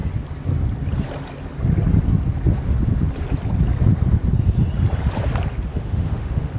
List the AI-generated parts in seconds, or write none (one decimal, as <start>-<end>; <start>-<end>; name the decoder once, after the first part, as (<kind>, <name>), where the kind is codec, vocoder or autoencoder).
5.7-6.6 (autoencoder, DAC-VAE)